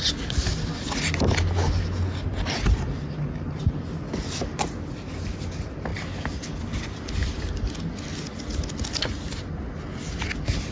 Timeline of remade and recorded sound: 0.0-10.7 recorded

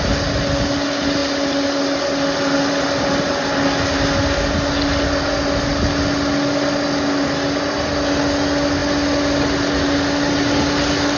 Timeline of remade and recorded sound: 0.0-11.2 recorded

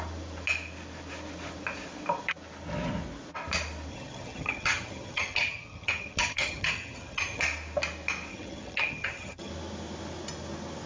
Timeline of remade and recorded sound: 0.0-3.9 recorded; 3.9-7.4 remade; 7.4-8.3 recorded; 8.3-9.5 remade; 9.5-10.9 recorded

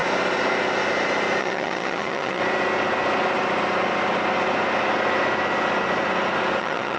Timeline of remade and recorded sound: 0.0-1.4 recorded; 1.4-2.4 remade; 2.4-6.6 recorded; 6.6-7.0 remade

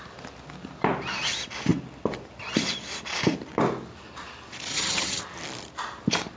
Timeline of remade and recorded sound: 0.0-4.7 recorded; 4.7-5.2 remade; 5.2-6.4 recorded

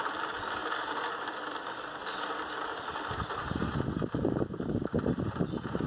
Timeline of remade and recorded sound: 0.0-5.9 recorded

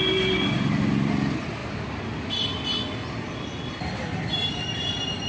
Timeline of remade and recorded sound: 0.0-5.3 recorded